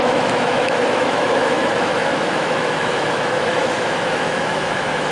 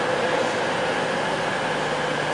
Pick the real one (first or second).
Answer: second